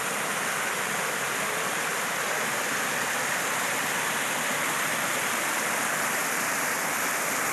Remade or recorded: recorded